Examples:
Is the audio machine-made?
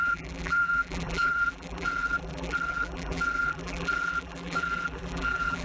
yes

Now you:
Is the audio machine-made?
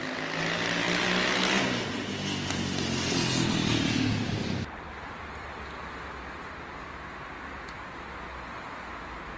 no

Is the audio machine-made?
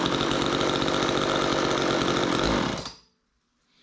no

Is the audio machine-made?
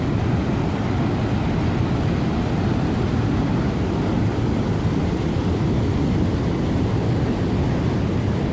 no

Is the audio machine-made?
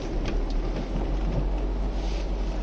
no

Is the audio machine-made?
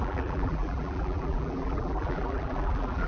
yes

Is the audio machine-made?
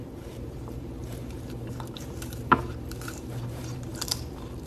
yes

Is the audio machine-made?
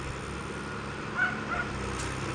no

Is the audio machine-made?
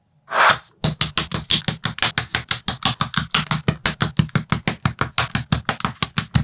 no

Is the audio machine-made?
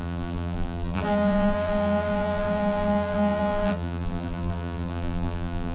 yes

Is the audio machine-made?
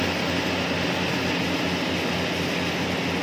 no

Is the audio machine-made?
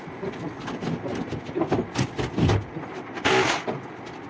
no